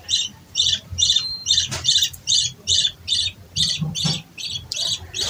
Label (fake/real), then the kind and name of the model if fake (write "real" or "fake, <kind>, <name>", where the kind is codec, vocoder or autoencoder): fake, vocoder, BigVGAN v2